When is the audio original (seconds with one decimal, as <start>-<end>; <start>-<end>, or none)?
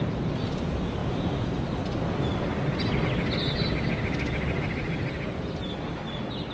0.0-6.5